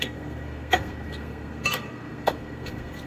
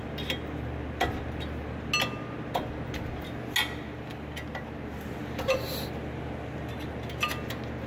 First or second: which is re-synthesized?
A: first